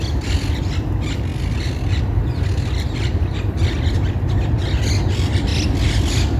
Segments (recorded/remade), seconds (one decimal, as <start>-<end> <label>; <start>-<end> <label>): 0.0-6.4 recorded